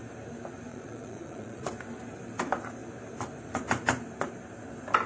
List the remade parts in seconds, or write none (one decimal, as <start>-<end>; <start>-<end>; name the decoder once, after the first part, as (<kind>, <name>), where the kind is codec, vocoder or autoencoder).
0.7-1.7 (vocoder, Vocos)